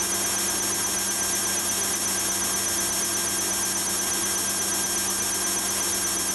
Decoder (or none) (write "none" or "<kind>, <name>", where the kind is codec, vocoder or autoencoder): none